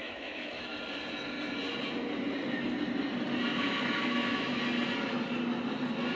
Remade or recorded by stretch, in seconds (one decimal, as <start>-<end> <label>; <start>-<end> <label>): 0.0-0.7 remade; 0.7-3.5 recorded; 3.5-4.6 remade; 4.6-6.2 recorded